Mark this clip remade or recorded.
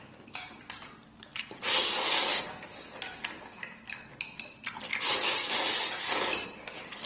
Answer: recorded